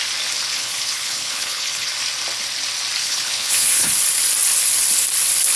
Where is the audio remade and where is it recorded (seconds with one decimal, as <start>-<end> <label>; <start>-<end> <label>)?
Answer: 0.0-0.5 recorded; 0.5-1.9 remade; 1.9-3.0 recorded; 3.0-3.9 remade; 3.9-5.6 recorded